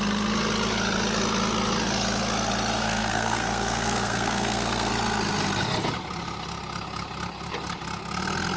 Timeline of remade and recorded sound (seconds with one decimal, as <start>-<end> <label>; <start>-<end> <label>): 0.0-2.8 recorded; 2.8-4.9 remade; 4.9-8.6 recorded